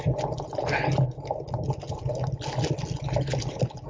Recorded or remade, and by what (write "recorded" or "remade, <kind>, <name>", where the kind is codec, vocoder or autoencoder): recorded